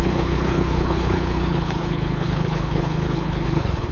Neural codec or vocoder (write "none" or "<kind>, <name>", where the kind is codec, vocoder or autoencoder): codec, HILCodec